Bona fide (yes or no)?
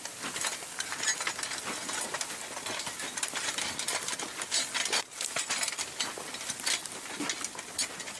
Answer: yes